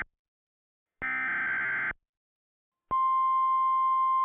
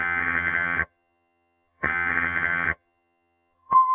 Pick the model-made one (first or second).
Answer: second